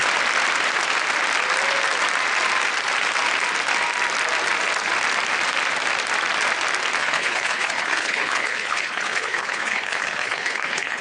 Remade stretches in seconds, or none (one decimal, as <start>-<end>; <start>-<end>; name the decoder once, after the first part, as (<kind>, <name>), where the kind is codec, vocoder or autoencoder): 7.0-11.0 (codec, HILCodec)